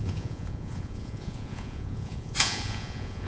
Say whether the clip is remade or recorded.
remade